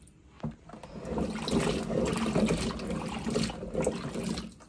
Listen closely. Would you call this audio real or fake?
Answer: real